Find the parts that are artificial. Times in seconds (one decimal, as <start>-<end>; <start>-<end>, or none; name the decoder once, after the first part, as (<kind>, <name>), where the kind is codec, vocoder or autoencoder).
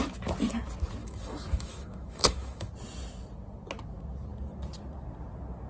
1.0-2.7 (autoencoder, DAC-VAE)